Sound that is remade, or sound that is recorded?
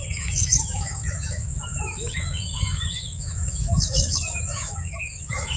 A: remade